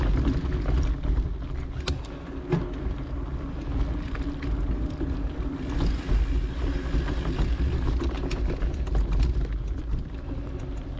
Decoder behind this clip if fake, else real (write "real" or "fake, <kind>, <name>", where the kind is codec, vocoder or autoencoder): real